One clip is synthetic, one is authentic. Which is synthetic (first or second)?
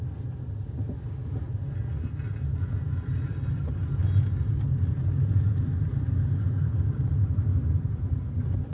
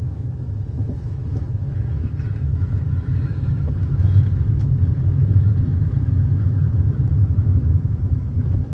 second